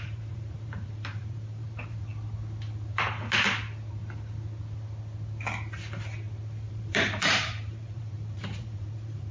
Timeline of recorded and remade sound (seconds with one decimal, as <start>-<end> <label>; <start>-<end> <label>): 0.0-2.1 remade; 2.1-6.7 recorded; 6.7-9.3 remade